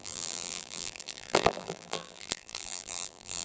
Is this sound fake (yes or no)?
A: yes